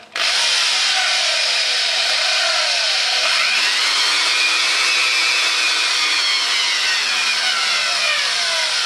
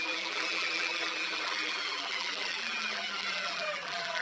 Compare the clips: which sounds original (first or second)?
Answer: first